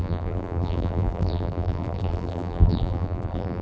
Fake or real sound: fake